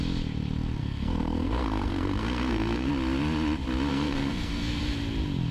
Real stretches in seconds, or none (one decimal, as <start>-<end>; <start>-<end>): 0.0-0.8; 2.9-3.9; 4.8-5.5